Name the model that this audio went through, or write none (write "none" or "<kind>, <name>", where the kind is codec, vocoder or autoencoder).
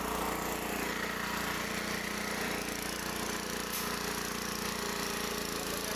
none